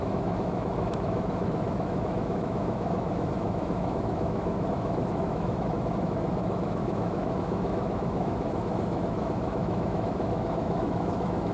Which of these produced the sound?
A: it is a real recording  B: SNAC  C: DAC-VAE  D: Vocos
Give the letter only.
C